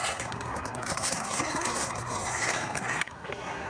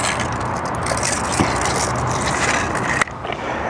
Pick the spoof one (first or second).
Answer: first